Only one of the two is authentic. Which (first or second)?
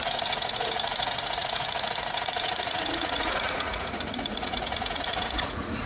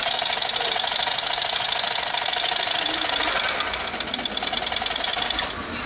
second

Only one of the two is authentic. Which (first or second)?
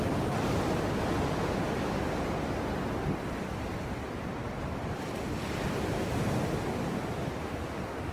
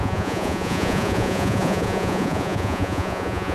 first